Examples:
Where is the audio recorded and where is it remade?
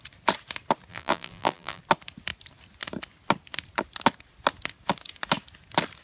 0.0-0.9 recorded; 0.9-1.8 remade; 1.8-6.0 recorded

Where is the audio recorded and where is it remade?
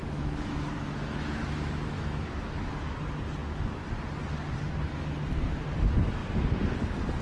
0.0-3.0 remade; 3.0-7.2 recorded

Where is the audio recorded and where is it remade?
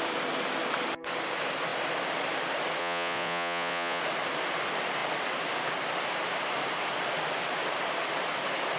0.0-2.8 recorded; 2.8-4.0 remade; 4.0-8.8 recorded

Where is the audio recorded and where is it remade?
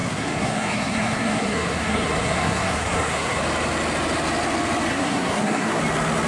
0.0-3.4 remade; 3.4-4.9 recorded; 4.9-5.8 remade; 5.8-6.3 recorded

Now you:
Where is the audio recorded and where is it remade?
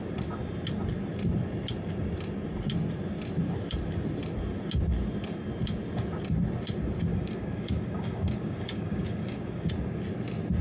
0.0-7.1 recorded; 7.1-9.7 remade; 9.7-10.6 recorded